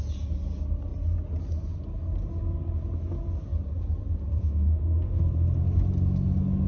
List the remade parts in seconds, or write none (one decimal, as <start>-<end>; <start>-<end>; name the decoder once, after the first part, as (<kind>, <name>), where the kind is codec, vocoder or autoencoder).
4.4-5.2 (autoencoder, DAC-VAE)